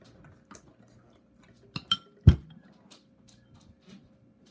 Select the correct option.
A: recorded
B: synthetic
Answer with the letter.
A